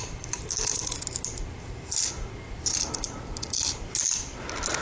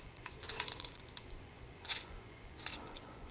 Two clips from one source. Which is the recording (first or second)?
first